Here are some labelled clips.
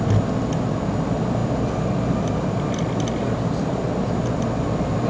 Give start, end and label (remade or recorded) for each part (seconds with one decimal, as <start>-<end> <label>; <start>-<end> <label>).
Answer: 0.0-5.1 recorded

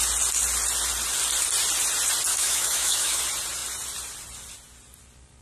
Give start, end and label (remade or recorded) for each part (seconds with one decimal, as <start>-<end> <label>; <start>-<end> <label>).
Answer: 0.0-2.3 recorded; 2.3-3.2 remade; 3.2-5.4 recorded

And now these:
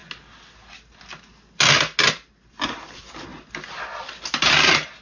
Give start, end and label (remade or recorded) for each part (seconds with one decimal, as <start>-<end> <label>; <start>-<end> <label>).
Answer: 0.0-5.0 recorded

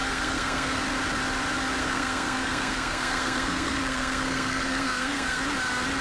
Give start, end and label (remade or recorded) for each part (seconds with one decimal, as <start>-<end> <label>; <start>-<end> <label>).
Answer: 0.0-0.8 remade; 0.8-1.8 recorded; 1.8-5.4 remade; 5.4-6.0 recorded

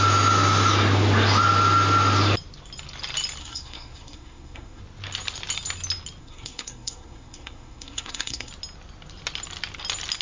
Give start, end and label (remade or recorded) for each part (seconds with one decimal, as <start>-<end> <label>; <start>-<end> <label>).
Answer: 0.0-3.4 recorded; 3.4-4.8 remade; 4.8-6.2 recorded; 6.2-8.5 remade; 8.5-10.2 recorded

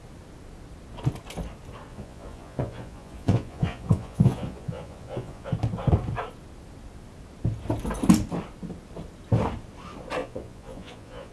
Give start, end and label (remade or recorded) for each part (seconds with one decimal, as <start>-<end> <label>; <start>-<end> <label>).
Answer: 0.0-1.9 recorded; 1.9-5.5 remade; 5.5-10.2 recorded; 10.2-11.3 remade